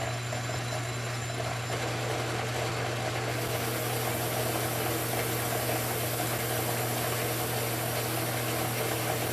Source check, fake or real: real